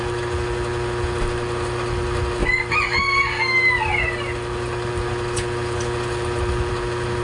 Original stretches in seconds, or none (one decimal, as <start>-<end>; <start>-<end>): 0.0-7.2